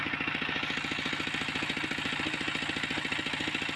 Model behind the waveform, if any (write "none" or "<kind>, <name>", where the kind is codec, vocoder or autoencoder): none